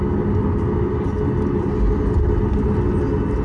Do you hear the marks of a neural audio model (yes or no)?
no